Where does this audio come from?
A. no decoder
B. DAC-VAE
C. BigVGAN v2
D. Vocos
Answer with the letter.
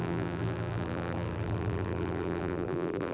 C